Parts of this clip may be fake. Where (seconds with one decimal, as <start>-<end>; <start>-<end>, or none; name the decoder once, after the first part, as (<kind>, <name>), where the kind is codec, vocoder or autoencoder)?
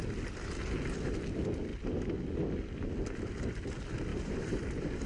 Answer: 4.1-5.1 (vocoder, BigVGAN v2)